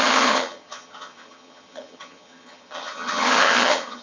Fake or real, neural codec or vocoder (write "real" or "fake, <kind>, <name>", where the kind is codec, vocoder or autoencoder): fake, vocoder, HiFi-GAN